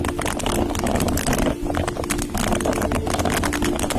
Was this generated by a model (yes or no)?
no